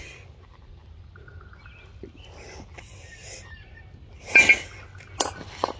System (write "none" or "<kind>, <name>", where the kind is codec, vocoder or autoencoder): none